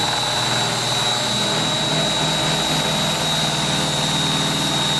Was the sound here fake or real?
real